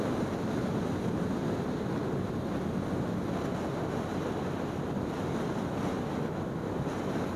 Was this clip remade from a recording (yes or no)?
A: no